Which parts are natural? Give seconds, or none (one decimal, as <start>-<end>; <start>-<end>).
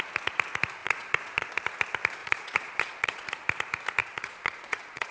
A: 0.0-0.8; 1.5-2.2; 3.3-4.0